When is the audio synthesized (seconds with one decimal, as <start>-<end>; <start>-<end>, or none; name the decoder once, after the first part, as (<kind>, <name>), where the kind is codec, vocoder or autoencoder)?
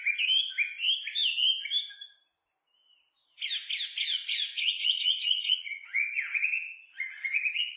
4.0-7.8 (vocoder, Vocos)